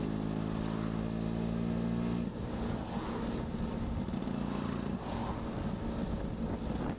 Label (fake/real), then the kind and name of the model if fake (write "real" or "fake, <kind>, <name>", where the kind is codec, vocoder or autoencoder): real